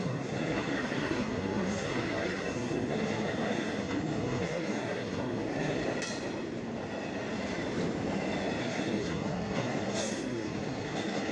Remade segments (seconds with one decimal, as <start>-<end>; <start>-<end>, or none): 0.0-5.8; 8.6-11.3